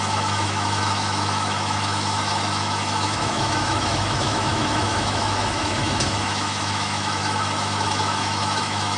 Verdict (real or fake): fake